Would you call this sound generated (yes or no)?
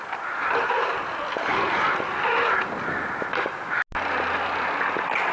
no